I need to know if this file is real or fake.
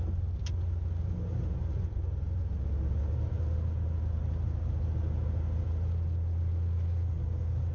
real